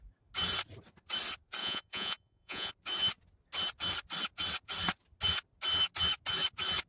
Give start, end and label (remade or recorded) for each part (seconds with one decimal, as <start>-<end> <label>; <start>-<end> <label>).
0.0-1.6 recorded; 1.6-2.7 remade; 2.7-6.9 recorded

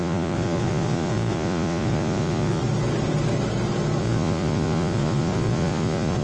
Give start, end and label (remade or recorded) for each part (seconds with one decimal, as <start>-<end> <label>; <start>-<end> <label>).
0.0-2.6 remade; 2.6-4.0 recorded; 4.0-6.2 remade

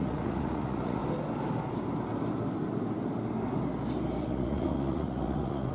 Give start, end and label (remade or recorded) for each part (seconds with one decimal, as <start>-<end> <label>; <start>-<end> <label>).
0.0-1.0 remade; 1.0-4.2 recorded; 4.2-5.7 remade

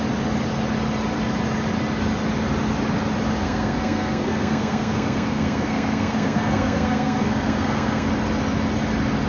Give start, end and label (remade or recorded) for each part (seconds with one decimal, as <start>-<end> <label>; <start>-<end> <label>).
0.0-3.4 recorded; 3.4-8.1 remade; 8.1-9.3 recorded

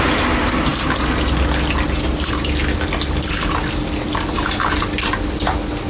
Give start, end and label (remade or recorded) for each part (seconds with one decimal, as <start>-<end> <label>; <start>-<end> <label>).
0.0-5.9 recorded

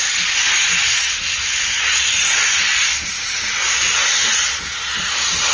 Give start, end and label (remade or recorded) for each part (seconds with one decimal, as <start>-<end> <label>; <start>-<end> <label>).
0.0-5.5 recorded